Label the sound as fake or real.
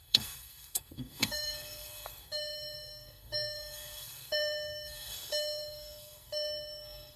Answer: fake